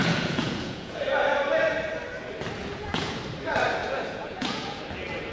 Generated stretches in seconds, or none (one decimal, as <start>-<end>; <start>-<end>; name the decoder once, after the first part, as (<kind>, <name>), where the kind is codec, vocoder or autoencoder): 0.0-1.1 (vocoder, Vocos); 2.6-3.2; 3.8-4.8

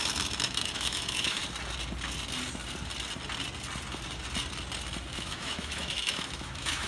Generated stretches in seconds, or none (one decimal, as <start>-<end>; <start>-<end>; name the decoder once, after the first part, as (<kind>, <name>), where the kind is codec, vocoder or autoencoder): 0.0-1.4 (autoencoder, DAC-VAE); 5.1-6.9

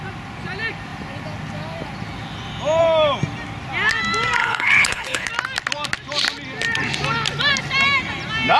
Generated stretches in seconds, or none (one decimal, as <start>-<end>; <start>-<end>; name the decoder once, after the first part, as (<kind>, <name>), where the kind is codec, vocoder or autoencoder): 4.4-5.3 (codec, HILCodec)

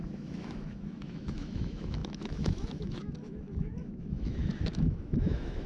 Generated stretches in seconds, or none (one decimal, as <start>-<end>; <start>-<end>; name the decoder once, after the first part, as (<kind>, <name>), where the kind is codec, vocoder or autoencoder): 0.0-5.7 (autoencoder, DAC-VAE)

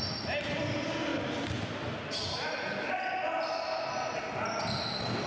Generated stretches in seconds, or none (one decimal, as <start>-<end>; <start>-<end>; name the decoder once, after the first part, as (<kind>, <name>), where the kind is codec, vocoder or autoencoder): none